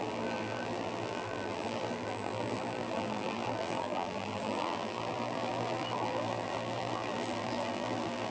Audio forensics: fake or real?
fake